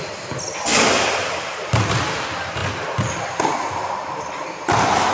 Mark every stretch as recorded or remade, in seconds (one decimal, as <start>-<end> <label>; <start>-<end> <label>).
0.0-5.1 recorded